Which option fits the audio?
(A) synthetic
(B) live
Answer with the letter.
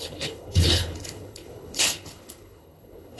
A